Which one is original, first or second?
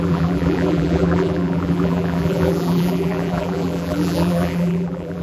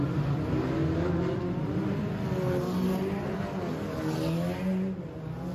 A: second